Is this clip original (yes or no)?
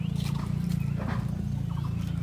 yes